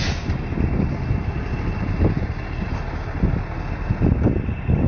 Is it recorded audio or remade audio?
recorded